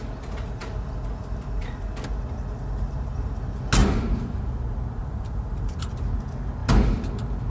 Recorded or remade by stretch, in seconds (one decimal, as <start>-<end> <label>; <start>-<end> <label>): 0.0-3.8 recorded; 3.8-4.4 remade; 4.4-5.0 recorded; 5.0-5.9 remade; 5.9-7.5 recorded